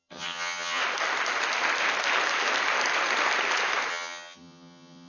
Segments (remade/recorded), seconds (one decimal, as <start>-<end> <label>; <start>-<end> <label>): 0.0-0.8 remade; 0.8-3.9 recorded; 3.9-5.1 remade